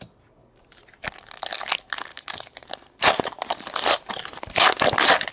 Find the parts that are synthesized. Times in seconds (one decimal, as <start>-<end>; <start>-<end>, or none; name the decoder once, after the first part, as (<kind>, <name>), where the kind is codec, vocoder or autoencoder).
none